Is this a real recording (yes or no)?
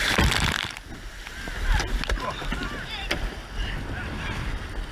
yes